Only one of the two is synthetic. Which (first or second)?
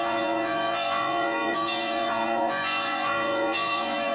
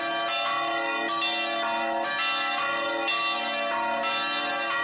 first